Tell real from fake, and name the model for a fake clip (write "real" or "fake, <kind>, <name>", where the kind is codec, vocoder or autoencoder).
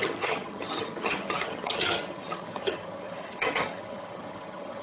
fake, vocoder, HiFi-GAN